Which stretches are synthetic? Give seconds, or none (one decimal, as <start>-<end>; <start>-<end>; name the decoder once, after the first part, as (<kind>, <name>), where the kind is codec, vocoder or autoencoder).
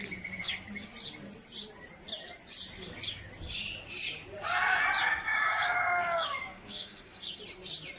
5.3-7.4 (codec, DAC)